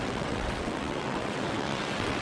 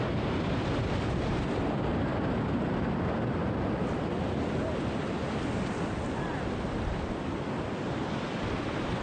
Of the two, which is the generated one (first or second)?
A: first